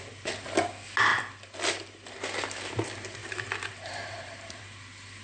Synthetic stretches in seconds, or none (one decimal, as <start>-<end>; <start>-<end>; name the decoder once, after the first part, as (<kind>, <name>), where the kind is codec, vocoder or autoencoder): 3.2-4.6 (vocoder, BigVGAN v2)